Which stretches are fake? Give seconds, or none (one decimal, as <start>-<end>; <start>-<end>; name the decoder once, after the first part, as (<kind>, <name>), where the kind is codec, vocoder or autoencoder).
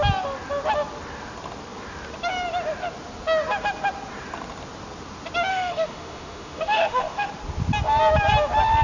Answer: 5.5-7.3 (autoencoder, DAC-VAE)